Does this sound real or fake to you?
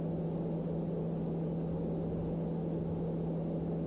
real